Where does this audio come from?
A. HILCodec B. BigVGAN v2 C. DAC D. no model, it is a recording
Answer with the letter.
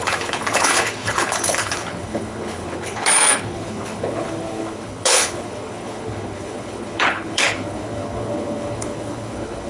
A